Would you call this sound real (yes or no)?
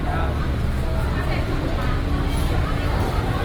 yes